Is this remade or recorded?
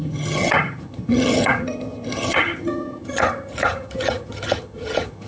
remade